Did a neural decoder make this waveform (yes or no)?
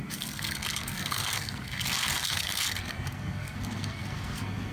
yes